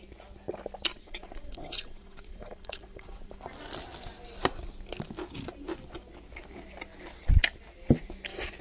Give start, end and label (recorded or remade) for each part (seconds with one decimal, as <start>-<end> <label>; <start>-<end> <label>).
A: 0.0-0.9 recorded; 0.9-3.3 remade; 3.3-8.6 recorded